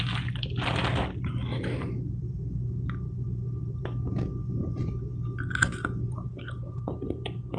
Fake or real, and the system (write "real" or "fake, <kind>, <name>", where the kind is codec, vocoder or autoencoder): real